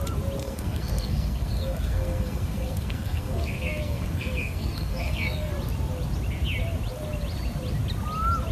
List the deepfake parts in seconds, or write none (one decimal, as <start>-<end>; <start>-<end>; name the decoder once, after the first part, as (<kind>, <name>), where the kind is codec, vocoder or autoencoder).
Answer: 0.4-5.5 (codec, SNAC)